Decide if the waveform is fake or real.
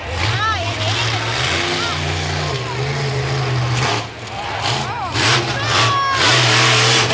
real